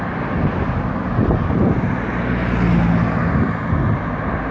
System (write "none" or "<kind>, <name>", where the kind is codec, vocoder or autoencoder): none